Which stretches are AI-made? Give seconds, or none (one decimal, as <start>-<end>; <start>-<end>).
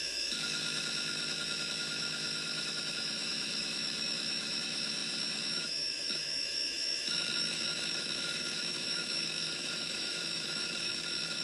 0.0-11.4